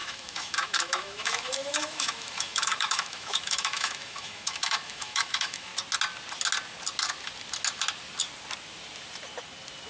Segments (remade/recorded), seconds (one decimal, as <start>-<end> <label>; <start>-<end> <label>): 0.0-5.7 remade; 5.7-9.9 recorded

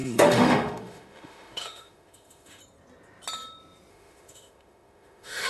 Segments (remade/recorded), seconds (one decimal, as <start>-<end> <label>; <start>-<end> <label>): 0.0-2.6 remade; 2.6-3.9 recorded; 3.9-5.5 remade

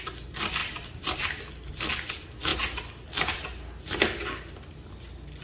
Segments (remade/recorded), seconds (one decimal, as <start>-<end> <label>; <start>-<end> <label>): 0.0-5.4 recorded

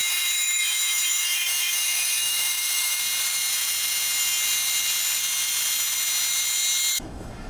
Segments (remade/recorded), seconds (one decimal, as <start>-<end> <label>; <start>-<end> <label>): 0.0-3.0 remade; 3.0-6.9 recorded; 6.9-7.5 remade

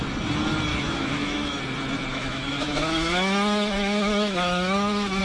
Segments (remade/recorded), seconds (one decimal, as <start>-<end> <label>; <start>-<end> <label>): 0.0-0.7 recorded; 0.7-1.6 remade; 1.6-2.1 recorded; 2.1-5.2 remade

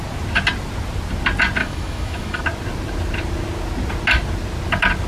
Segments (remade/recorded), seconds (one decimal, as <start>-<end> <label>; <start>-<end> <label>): 0.0-1.6 recorded; 1.6-2.4 remade; 2.4-5.1 recorded

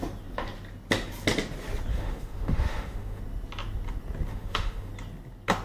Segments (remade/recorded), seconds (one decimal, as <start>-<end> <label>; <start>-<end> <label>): 0.0-1.9 recorded; 1.9-3.2 remade; 3.2-4.3 recorded; 4.3-4.9 remade; 4.9-5.6 recorded